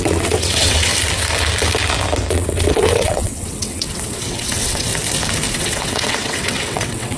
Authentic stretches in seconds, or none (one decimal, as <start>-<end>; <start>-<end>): 0.9-2.3; 4.9-5.5